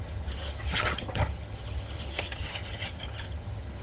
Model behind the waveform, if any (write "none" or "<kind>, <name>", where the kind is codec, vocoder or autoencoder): vocoder, HiFi-GAN